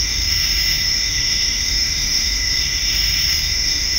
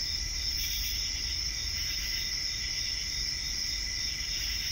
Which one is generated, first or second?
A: first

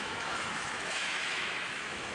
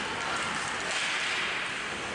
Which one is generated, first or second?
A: first